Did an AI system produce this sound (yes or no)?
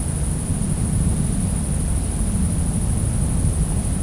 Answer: no